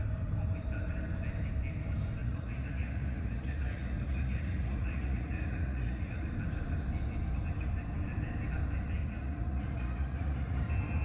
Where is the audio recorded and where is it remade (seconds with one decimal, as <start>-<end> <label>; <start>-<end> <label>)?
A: 0.0-2.2 recorded; 2.2-6.3 remade; 6.3-9.0 recorded; 9.0-10.6 remade; 10.6-11.0 recorded